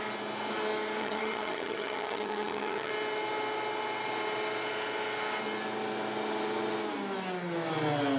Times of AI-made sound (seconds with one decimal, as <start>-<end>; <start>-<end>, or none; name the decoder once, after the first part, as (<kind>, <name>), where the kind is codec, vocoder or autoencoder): 1.0-2.9 (vocoder, HiFi-GAN)

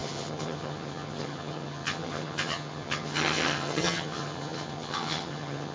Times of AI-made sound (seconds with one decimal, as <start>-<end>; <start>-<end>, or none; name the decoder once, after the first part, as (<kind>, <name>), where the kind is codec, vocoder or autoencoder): 0.0-5.7 (vocoder, HiFi-GAN)

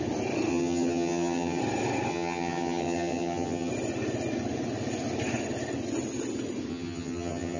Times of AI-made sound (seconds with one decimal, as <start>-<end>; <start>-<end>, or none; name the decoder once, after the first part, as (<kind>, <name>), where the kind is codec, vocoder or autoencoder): 0.5-1.6 (vocoder, HiFi-GAN); 2.1-3.7; 6.7-7.6

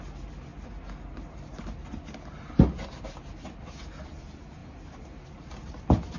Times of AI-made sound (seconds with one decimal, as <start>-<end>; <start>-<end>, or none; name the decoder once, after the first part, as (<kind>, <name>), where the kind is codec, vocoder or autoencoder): none

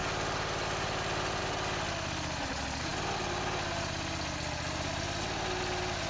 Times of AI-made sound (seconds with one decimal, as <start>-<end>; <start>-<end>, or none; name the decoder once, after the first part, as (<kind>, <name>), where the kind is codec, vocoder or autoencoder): none

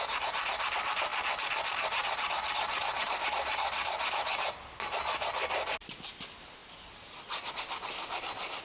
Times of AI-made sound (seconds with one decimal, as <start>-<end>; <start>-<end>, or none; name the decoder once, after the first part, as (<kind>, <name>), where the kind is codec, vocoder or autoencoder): none

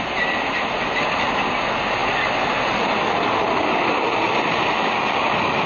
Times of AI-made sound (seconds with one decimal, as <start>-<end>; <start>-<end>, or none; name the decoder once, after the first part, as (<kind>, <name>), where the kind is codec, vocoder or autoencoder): none

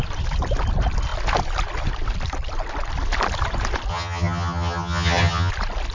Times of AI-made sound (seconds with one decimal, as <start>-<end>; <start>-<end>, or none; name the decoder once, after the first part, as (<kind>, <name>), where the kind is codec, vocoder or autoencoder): 3.9-5.5 (vocoder, HiFi-GAN)